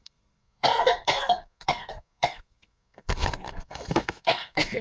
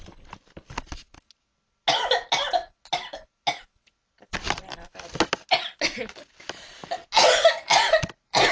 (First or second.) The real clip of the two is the second